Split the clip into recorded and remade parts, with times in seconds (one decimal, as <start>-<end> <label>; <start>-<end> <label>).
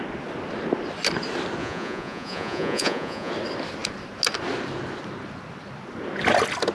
0.0-1.6 recorded; 1.6-3.3 remade; 3.3-6.7 recorded